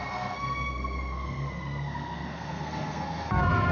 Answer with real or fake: fake